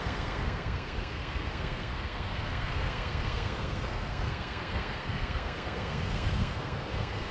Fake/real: fake